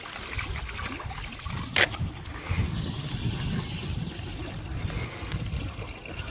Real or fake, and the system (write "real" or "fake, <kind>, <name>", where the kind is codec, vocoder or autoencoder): real